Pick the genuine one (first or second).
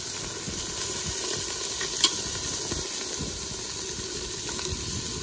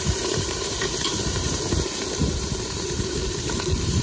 first